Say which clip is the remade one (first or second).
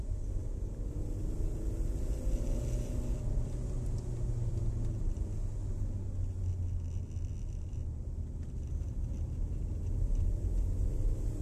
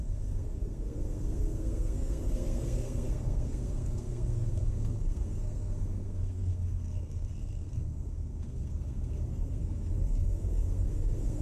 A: second